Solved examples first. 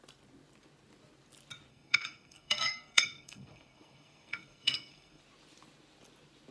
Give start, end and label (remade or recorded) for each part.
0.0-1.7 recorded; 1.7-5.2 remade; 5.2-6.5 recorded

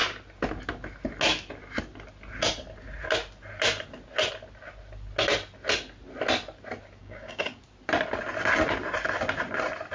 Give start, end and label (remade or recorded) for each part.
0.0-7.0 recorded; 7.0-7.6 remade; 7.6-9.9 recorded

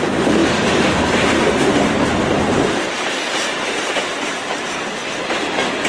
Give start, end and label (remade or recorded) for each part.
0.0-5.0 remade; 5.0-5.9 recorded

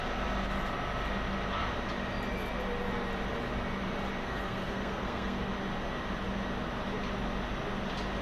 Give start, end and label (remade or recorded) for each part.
0.0-4.2 recorded; 4.2-5.5 remade; 5.5-8.2 recorded

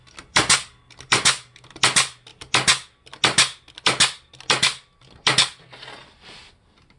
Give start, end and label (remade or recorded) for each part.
0.0-1.0 remade; 1.0-7.0 recorded

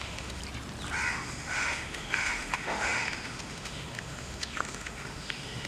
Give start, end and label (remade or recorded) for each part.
0.0-0.4 remade; 0.4-1.1 recorded; 1.1-5.7 remade

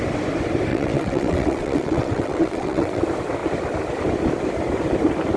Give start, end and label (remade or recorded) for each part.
0.0-0.7 recorded; 0.7-3.0 remade; 3.0-5.4 recorded

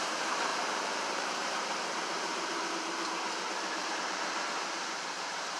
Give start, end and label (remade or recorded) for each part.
0.0-5.6 remade